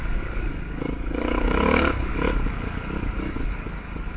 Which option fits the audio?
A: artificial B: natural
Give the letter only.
A